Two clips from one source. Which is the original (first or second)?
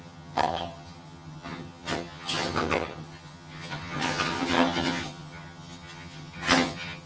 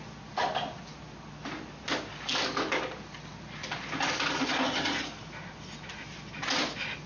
second